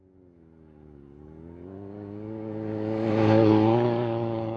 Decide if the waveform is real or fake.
fake